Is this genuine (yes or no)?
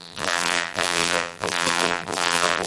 no